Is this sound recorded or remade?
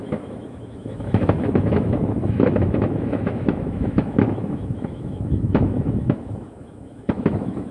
remade